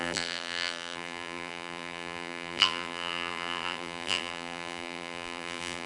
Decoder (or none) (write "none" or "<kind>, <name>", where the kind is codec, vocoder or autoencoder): vocoder, BigVGAN v2